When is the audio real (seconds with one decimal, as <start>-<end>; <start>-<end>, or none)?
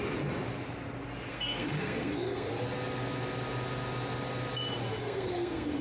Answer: 0.0-1.3; 2.5-5.0